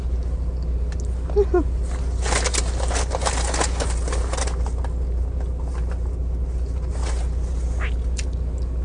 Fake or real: real